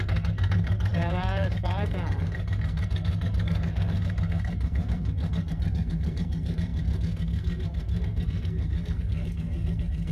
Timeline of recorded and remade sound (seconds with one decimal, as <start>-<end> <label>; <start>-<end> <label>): 0.0-10.1 remade